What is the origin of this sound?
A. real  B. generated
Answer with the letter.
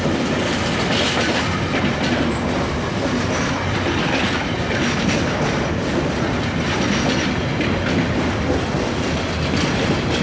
A